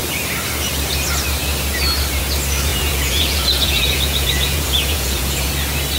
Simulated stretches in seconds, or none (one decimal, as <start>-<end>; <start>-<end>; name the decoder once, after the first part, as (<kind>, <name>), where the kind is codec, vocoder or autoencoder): 2.7-5.5 (vocoder, Vocos)